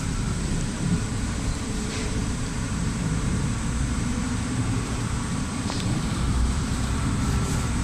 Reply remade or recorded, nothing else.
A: remade